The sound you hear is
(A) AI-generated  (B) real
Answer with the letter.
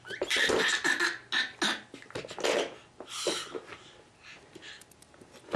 B